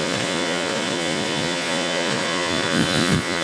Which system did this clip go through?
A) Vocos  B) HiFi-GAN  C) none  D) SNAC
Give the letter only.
A